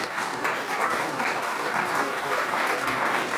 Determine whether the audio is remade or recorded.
remade